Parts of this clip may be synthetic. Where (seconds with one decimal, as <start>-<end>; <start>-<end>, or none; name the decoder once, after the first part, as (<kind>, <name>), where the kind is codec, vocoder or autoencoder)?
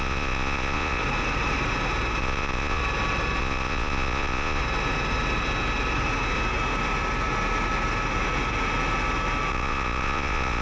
0.0-1.0 (vocoder, Vocos); 2.2-2.8; 3.4-4.6; 9.5-10.6